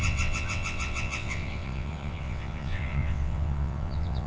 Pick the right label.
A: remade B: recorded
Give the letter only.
A